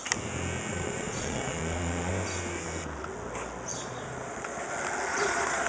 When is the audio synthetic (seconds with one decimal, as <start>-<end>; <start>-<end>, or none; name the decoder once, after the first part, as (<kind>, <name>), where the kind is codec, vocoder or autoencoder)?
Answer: 0.7-2.1 (vocoder, Vocos); 3.7-4.6; 5.1-5.7